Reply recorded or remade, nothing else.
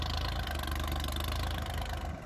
recorded